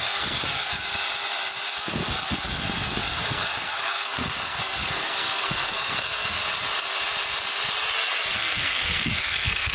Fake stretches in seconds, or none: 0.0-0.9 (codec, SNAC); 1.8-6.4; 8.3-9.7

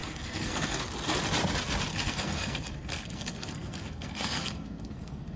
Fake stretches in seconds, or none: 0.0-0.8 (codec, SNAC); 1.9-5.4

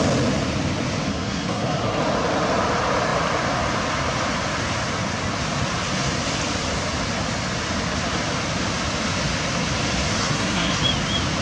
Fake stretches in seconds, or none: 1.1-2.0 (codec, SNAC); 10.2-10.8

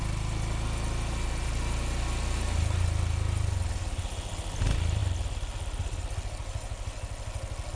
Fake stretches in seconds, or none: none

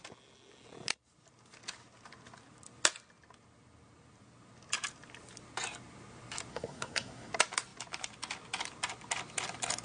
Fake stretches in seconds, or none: 6.5-7.3 (codec, SNAC)

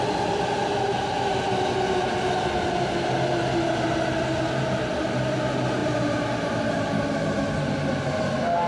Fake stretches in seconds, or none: none

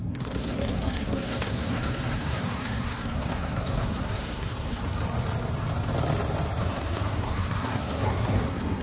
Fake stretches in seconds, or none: 0.0-4.8 (codec, SNAC); 6.6-8.8